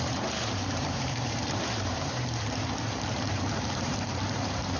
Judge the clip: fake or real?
fake